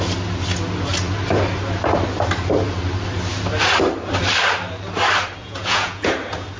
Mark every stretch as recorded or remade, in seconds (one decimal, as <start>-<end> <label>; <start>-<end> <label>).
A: 0.0-5.4 recorded; 5.4-6.1 remade; 6.1-6.6 recorded